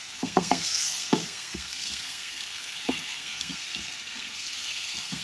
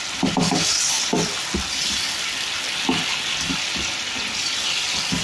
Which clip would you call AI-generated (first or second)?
first